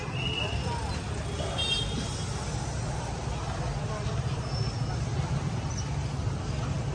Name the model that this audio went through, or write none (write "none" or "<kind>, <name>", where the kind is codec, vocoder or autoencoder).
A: none